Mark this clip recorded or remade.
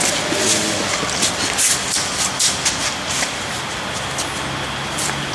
recorded